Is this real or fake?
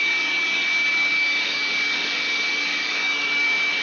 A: fake